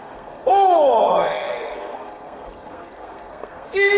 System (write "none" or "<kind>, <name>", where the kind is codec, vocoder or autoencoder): codec, SNAC